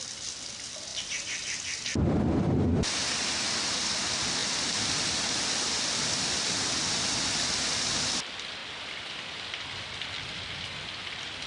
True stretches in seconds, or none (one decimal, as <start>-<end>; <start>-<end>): 0.0-0.9; 3.2-11.5